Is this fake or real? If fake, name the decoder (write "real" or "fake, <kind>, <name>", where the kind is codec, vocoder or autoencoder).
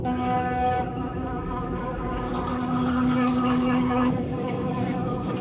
fake, codec, DAC